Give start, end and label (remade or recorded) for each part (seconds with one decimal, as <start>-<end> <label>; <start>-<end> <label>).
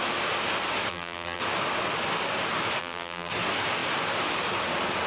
0.0-0.9 recorded; 0.9-1.4 remade; 1.4-2.8 recorded; 2.8-3.3 remade; 3.3-5.1 recorded